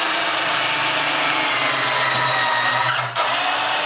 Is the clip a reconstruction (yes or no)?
no